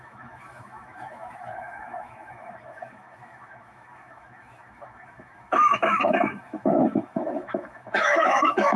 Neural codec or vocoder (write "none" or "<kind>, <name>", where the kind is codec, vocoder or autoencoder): autoencoder, DAC-VAE